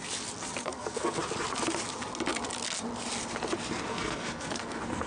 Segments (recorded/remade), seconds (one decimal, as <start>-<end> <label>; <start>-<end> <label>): 0.0-0.6 recorded; 0.6-1.2 remade; 1.2-3.9 recorded; 3.9-5.1 remade